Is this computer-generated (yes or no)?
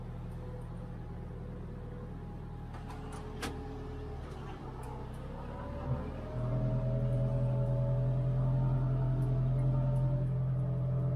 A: no